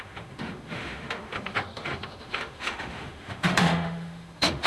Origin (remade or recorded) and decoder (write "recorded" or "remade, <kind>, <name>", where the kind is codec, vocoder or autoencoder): remade, autoencoder, DAC-VAE